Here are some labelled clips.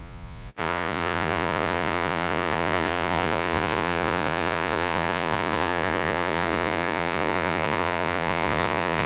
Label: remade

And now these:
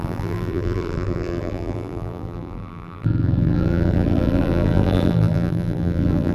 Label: remade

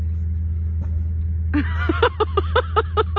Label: recorded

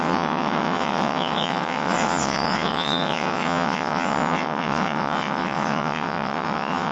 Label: remade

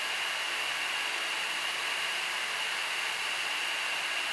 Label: recorded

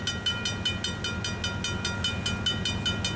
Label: recorded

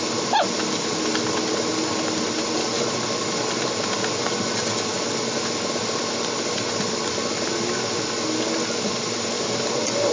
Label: recorded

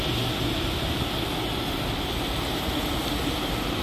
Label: recorded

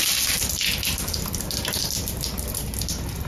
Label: recorded